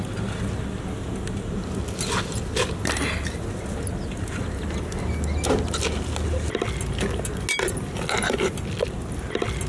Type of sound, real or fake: real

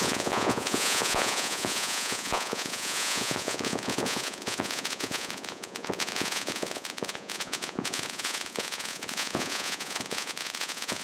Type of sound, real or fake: fake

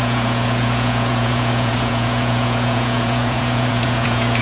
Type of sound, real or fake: fake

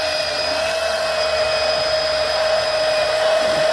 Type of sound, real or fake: real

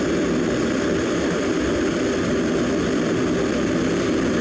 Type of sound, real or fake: real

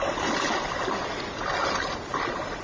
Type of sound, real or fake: real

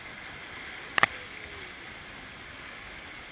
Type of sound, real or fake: real